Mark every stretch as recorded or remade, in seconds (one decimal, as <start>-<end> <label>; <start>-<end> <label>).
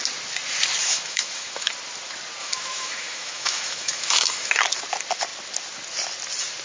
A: 0.0-0.8 recorded; 0.8-1.7 remade; 1.7-2.4 recorded; 2.4-4.5 remade; 4.5-6.6 recorded